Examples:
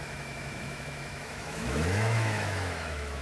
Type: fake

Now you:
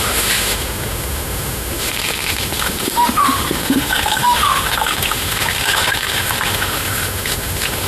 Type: fake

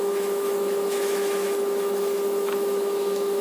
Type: fake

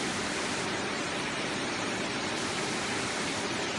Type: real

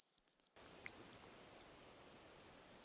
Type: real